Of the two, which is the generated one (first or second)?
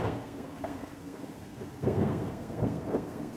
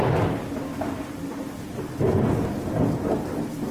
first